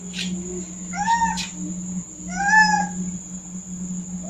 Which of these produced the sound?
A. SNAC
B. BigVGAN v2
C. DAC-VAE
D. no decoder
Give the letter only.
D